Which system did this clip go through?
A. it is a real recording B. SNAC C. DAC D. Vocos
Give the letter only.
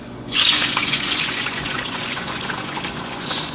D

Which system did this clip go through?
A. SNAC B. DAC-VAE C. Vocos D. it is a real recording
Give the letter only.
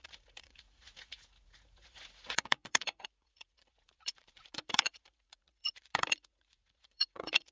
C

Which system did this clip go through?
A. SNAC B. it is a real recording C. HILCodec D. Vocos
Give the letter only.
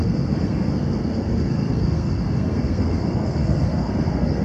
A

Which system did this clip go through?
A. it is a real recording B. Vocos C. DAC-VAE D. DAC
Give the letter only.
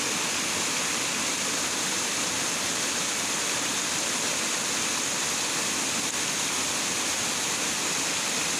A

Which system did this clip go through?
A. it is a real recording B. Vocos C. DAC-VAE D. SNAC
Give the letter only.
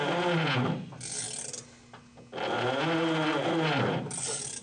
A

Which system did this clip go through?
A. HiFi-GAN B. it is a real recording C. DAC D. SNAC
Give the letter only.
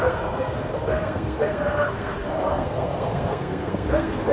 D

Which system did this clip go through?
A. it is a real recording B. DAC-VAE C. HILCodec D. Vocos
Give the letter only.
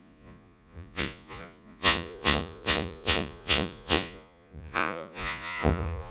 D